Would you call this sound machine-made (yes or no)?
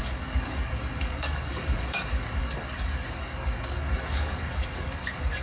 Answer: yes